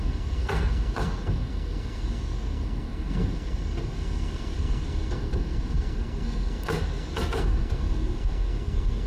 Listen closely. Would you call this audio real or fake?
fake